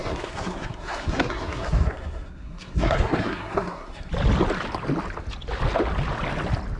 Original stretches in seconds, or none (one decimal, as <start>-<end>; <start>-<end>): 4.1-6.8

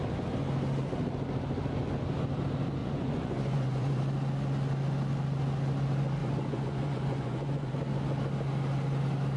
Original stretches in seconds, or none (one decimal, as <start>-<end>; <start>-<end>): 0.0-2.8; 4.0-6.2; 7.7-9.4

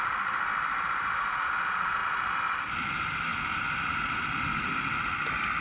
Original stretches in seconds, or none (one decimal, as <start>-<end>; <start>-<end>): 0.0-3.3; 3.9-5.6

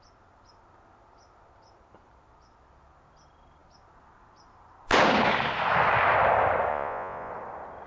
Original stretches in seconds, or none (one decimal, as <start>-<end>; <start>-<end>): 0.0-6.7; 7.3-7.9

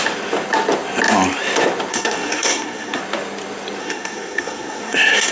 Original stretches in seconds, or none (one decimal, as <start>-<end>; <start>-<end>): 0.0-1.9; 3.0-3.8

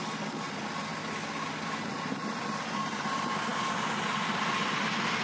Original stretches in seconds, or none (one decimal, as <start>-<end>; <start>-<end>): 0.0-5.2

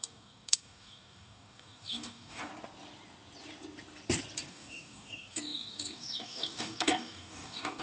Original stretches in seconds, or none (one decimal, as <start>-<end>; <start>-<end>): 2.5-4.5

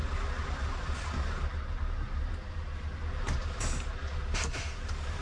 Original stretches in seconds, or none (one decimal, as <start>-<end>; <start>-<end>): 1.1-5.2